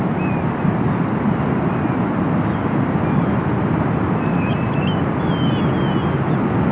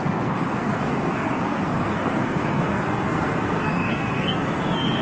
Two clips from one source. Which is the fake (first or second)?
second